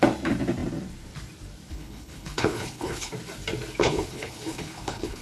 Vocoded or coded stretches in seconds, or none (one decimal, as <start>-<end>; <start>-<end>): 1.7-3.1; 3.8-5.2